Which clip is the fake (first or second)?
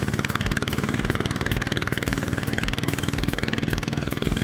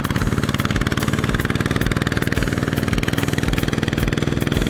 first